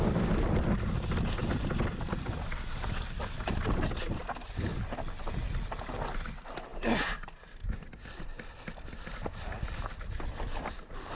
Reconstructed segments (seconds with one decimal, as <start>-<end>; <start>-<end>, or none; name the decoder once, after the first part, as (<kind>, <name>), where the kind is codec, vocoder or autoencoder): none

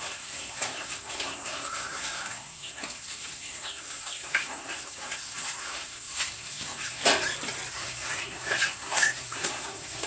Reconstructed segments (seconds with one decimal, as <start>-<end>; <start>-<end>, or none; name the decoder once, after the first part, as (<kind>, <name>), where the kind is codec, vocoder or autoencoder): 0.0-7.0 (codec, SNAC); 7.7-10.1

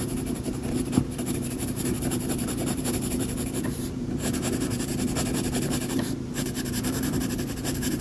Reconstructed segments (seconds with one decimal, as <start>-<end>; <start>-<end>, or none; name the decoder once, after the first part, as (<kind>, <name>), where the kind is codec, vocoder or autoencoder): 0.0-4.9 (vocoder, BigVGAN v2); 5.5-8.0

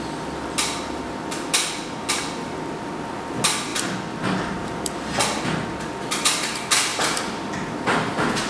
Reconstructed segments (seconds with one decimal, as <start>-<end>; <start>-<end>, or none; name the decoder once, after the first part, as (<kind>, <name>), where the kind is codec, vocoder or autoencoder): none

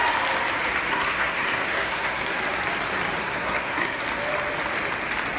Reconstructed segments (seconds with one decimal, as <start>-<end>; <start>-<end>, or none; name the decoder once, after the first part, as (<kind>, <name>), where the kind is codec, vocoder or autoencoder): 0.9-2.4 (codec, SNAC); 3.2-4.0